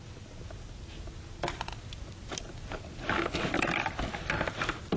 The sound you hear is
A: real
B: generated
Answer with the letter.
A